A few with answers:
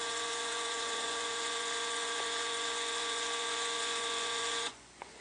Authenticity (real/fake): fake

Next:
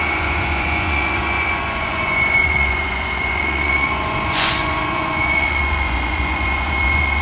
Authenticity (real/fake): fake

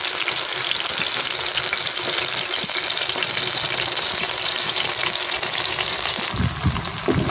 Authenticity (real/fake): real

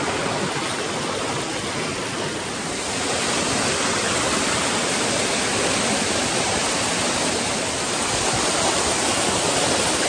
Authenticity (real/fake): real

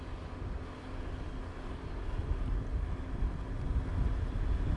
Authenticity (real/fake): real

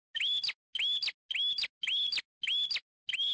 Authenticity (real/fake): real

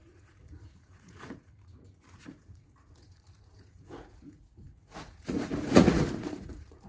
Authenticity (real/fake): fake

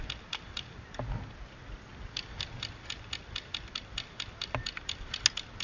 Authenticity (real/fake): real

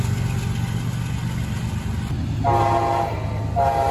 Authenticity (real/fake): real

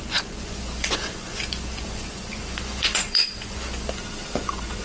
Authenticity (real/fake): fake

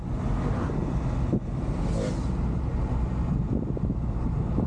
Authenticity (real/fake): real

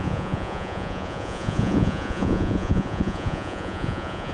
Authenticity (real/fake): fake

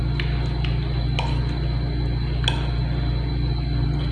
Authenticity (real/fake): real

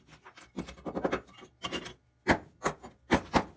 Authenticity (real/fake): real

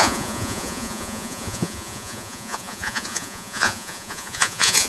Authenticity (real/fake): fake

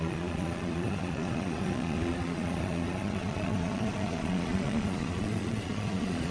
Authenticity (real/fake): fake